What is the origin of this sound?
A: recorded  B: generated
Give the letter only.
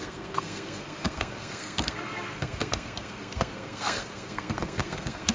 B